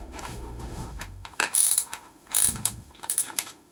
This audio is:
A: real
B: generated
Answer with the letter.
B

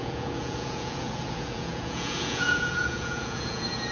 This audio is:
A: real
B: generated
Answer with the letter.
B